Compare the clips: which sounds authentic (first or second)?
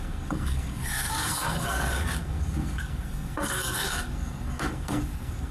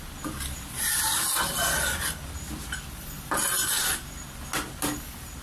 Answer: second